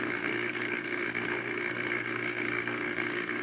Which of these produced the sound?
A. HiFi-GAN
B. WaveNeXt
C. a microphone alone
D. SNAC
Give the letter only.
D